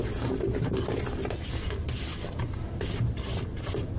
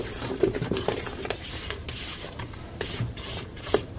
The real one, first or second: first